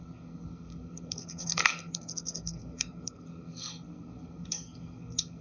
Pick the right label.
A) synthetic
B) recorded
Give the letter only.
A